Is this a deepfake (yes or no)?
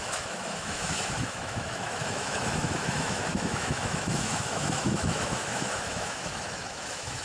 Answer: yes